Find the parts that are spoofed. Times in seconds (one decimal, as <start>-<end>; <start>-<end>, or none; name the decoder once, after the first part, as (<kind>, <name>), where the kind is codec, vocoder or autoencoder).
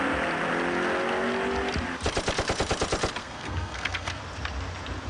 3.2-4.2 (codec, SNAC)